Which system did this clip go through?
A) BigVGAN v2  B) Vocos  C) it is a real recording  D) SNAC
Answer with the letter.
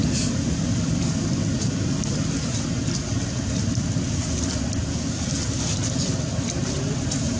C